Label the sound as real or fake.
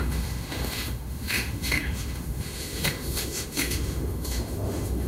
fake